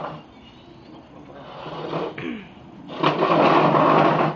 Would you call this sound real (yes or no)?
yes